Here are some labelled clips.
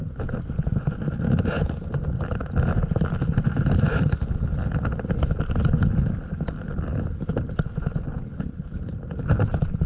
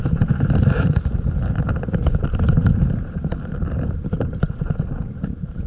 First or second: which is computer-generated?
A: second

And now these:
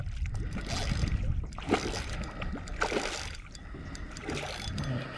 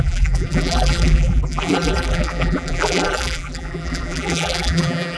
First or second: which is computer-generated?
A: second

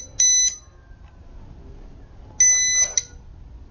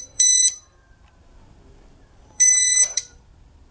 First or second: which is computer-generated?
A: second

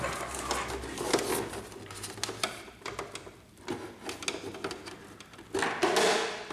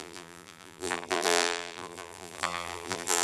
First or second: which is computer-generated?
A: second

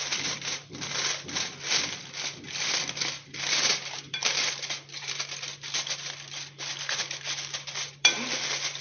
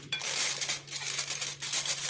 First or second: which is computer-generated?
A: first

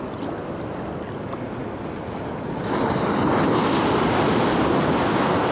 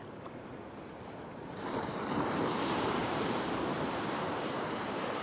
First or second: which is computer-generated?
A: second